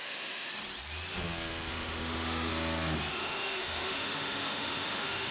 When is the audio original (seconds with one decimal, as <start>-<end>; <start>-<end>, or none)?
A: 0.5-1.7; 2.5-3.1